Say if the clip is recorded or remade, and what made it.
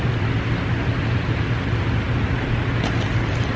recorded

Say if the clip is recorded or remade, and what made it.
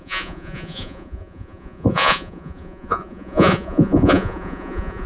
remade, vocoder, Vocos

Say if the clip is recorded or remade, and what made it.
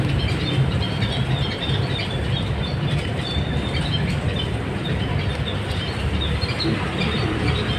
recorded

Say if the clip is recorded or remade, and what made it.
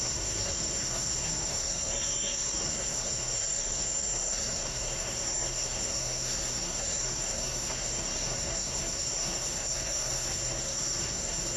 remade, codec, SNAC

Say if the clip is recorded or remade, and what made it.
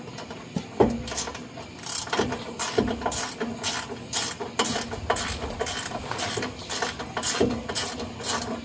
recorded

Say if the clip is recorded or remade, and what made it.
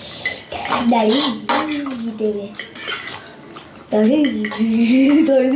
recorded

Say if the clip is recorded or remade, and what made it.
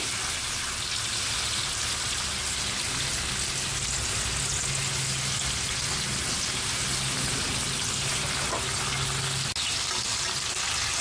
recorded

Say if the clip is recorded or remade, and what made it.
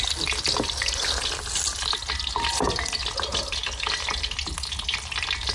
recorded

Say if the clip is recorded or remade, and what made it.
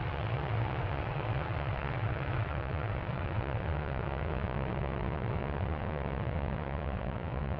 remade, vocoder, WaveNeXt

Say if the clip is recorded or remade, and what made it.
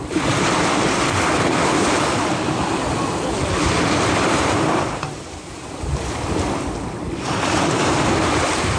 remade, vocoder, BigVGAN v2